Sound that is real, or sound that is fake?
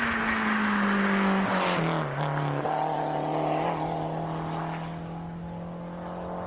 real